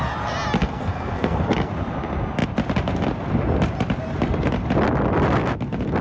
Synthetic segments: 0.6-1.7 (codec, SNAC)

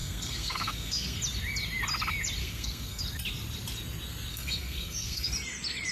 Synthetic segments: 0.0-1.2 (codec, SNAC); 2.4-3.0; 4.3-5.3

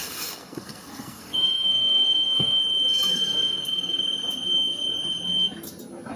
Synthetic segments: 0.0-2.6 (codec, SNAC); 3.1-4.0

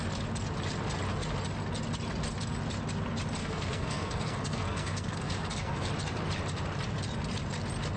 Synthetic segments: 3.4-5.9 (codec, SNAC)

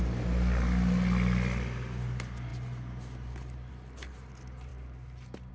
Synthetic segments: none